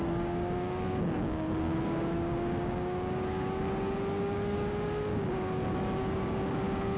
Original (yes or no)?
no